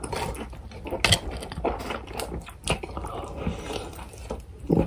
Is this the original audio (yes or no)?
yes